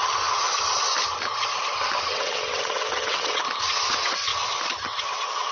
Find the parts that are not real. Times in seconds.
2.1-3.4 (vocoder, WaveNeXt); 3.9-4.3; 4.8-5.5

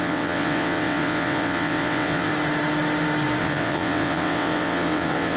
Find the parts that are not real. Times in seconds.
0.0-2.3 (vocoder, WaveNeXt); 3.4-5.4

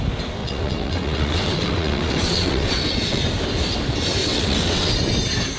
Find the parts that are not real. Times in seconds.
0.4-3.2 (vocoder, WaveNeXt); 4.2-4.9